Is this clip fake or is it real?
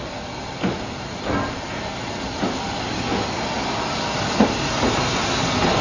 real